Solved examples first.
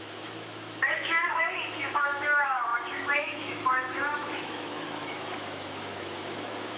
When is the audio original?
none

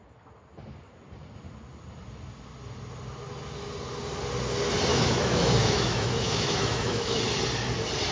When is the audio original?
0.0-4.9; 7.2-8.1

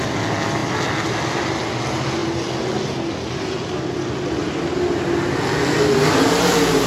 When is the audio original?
0.0-6.9

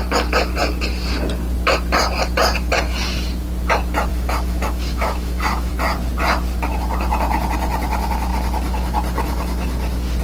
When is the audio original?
0.0-4.1; 5.7-10.2

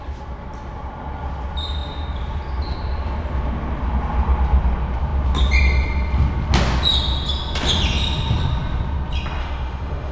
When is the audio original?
0.0-9.4

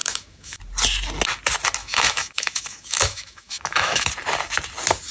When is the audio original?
0.6-1.8; 4.1-5.1

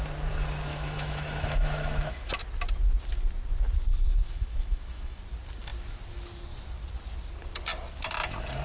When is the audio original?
0.0-0.7; 2.3-3.9; 5.2-8.6

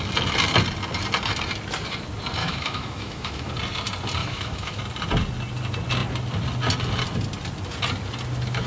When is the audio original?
0.0-2.4; 3.5-4.2; 4.8-8.7